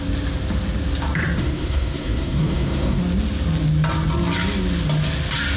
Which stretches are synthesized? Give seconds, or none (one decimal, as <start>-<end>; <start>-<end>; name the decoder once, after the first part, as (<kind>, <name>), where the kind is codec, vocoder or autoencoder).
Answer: 1.4-3.0 (codec, SNAC)